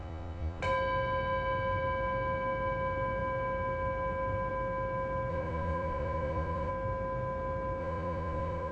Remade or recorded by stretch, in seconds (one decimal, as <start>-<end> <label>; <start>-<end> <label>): 0.0-0.6 remade; 0.6-5.3 recorded; 5.3-6.7 remade; 6.7-7.8 recorded; 7.8-8.7 remade